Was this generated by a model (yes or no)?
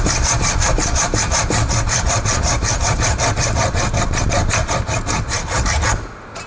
no